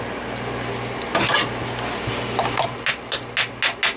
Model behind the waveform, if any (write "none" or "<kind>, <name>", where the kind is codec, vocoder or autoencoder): none